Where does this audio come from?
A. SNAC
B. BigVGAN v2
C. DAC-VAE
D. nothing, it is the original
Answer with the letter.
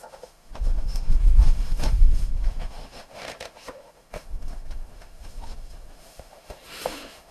C